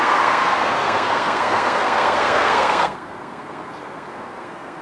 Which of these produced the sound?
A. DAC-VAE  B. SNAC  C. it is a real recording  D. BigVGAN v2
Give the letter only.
B